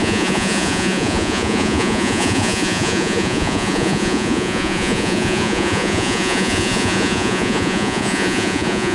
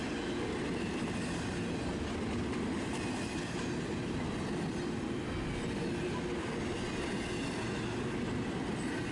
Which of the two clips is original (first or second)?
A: second